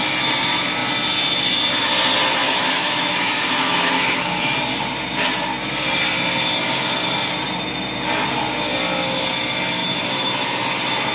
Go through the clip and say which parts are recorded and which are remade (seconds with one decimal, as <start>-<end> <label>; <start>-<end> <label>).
0.0-2.4 recorded; 2.4-4.5 remade; 4.5-11.1 recorded